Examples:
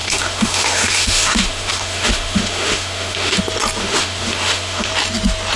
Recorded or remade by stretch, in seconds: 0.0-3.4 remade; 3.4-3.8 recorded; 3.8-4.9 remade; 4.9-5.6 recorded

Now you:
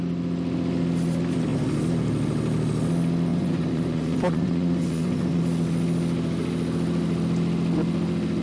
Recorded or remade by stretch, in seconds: 0.0-3.3 recorded; 3.3-5.4 remade; 5.4-8.4 recorded

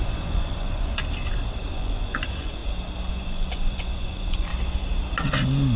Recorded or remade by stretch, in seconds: 0.0-1.0 remade; 1.0-1.7 recorded; 1.7-2.6 remade; 2.6-3.1 recorded; 3.1-4.5 remade; 4.5-5.8 recorded

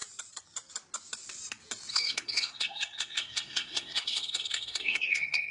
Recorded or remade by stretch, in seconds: 0.0-1.9 recorded; 1.9-5.5 remade